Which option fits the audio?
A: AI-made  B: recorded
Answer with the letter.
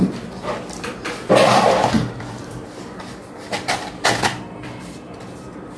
A